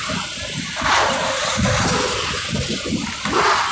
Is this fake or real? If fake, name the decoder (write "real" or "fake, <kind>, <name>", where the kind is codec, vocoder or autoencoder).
real